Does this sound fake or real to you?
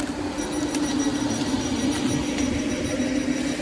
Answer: real